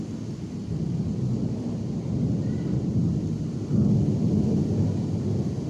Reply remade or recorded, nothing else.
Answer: recorded